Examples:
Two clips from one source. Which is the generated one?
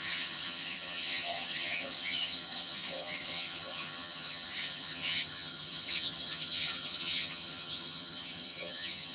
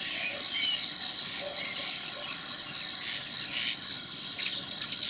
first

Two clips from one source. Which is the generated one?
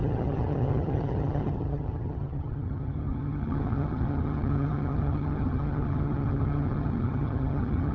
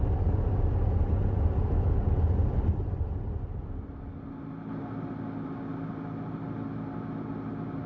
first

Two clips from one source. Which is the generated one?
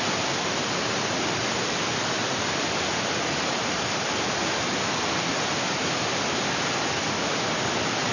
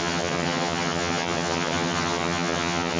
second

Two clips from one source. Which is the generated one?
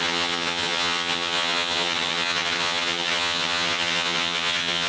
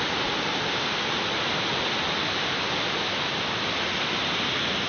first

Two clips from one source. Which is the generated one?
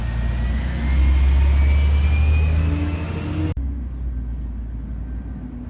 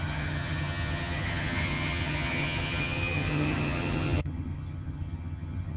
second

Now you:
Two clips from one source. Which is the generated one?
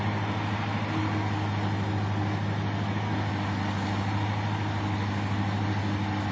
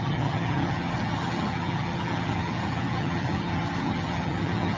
second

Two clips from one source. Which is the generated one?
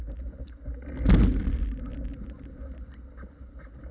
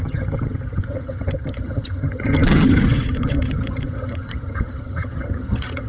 second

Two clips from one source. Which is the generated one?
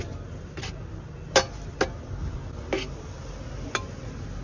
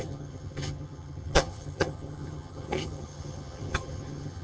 second